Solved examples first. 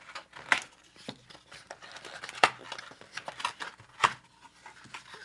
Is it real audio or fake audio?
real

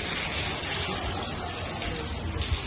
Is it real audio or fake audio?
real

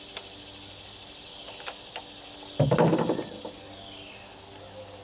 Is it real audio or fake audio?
real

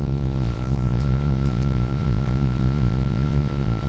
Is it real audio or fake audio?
fake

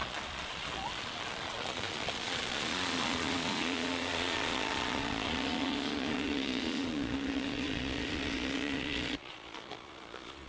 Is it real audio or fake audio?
fake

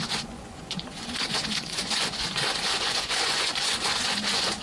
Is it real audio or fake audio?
fake